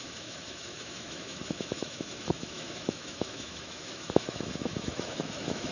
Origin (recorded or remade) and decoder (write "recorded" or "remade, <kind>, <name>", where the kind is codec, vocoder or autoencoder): remade, autoencoder, DAC-VAE